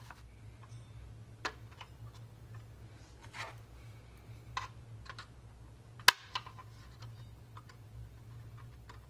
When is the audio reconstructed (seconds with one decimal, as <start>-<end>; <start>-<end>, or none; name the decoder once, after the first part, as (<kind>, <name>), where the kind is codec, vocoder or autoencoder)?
none